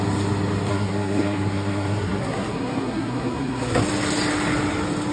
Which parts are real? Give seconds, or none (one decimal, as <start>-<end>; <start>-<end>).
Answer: 0.0-0.7; 3.8-5.1